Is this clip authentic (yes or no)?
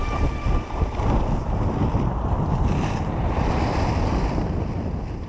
no